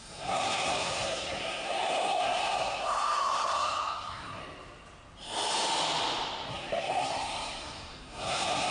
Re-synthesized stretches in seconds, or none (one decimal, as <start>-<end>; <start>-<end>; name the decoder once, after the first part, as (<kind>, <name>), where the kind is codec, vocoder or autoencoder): 0.0-4.4 (codec, SNAC); 6.5-8.7